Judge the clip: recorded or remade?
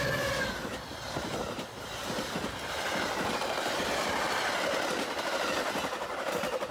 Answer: remade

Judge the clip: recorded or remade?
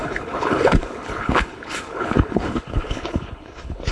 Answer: remade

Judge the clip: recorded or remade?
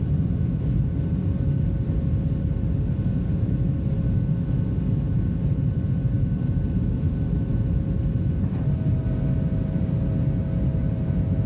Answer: recorded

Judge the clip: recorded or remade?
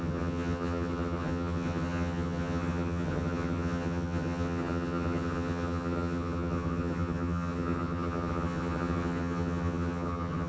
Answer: remade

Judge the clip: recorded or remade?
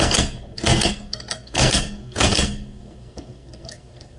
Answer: remade